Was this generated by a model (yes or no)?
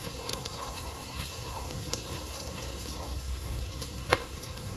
yes